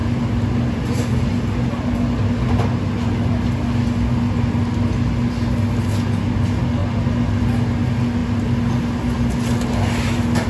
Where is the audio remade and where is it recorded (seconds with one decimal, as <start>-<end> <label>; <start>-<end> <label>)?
0.0-10.5 recorded

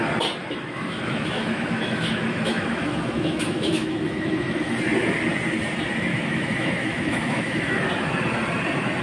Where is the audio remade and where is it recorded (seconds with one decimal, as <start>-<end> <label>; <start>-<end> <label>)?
0.0-0.4 recorded; 0.4-4.7 remade; 4.7-6.1 recorded; 6.1-7.9 remade; 7.9-9.0 recorded